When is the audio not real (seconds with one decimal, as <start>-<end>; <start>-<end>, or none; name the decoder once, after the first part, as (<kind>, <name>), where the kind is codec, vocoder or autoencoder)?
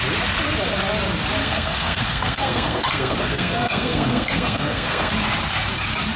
1.4-5.1 (codec, SNAC)